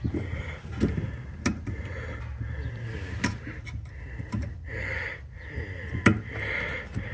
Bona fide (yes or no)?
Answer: yes